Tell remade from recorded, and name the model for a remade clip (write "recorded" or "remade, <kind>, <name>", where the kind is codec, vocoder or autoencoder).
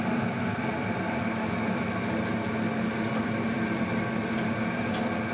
recorded